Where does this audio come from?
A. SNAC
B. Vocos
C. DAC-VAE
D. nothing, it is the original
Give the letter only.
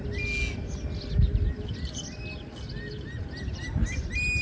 D